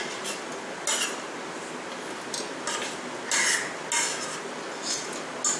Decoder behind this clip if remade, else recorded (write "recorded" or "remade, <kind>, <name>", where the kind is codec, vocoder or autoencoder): recorded